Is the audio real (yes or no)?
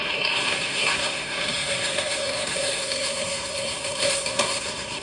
no